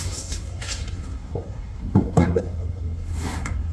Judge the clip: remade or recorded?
remade